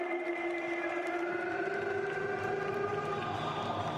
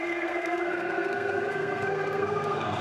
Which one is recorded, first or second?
first